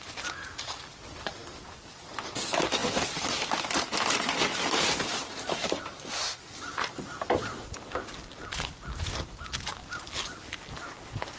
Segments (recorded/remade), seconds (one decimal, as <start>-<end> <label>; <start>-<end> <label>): 0.0-11.4 recorded